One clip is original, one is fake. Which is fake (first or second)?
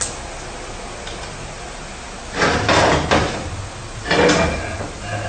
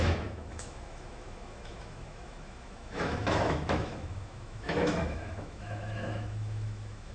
second